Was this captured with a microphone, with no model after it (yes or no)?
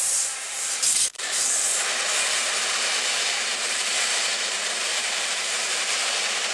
no